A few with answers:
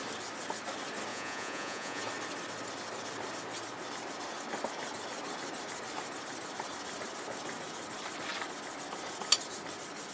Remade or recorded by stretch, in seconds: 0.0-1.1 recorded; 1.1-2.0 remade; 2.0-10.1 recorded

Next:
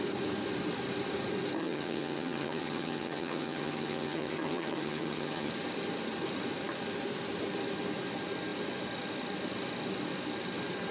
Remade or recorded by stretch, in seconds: 0.0-1.6 recorded; 1.6-5.5 remade; 5.5-10.9 recorded

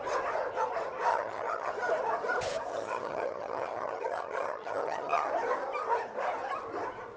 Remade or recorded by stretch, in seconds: 0.0-1.1 recorded; 1.1-1.7 remade; 1.7-2.7 recorded; 2.7-5.3 remade; 5.3-7.2 recorded

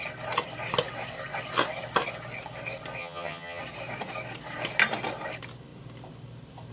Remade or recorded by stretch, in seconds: 0.0-3.0 recorded; 3.0-3.6 remade; 3.6-6.7 recorded

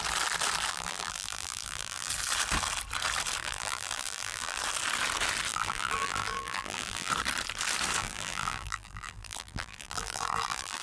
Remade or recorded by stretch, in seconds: 0.0-0.7 recorded; 0.7-2.1 remade; 2.1-3.4 recorded; 3.4-4.6 remade; 4.6-5.5 recorded; 5.5-7.1 remade; 7.1-8.0 recorded; 8.0-10.8 remade

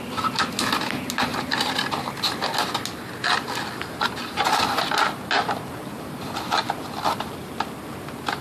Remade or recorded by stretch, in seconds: 0.0-8.4 recorded

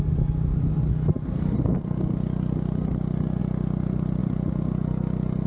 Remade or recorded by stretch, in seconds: 0.0-5.5 recorded